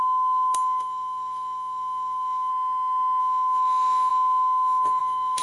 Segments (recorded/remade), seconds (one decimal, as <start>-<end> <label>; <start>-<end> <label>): 0.0-2.5 remade; 2.5-3.2 recorded; 3.2-5.4 remade